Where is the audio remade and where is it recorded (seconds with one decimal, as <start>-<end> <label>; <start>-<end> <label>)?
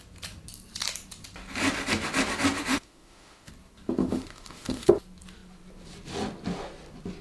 0.0-2.7 recorded; 2.7-3.5 remade; 3.5-4.0 recorded; 4.0-4.9 remade; 4.9-7.2 recorded